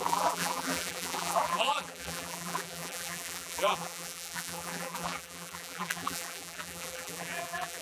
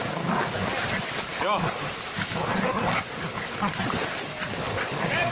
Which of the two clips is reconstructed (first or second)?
first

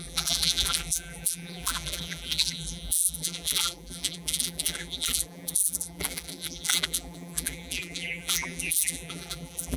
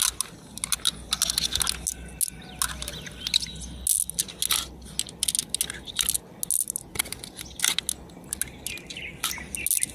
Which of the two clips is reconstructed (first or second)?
first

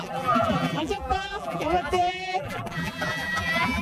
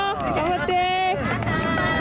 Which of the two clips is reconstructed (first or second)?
first